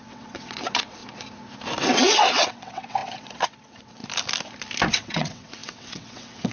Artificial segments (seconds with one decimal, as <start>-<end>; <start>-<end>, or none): 0.0-1.0; 1.8-4.0; 4.9-6.5